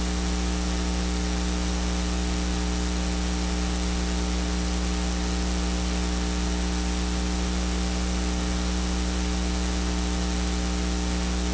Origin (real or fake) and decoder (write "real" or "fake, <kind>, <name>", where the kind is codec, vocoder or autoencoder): real